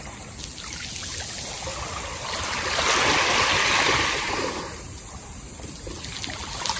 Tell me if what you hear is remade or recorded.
recorded